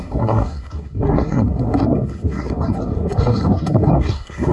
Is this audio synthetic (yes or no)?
yes